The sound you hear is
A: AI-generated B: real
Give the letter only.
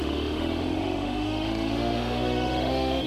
A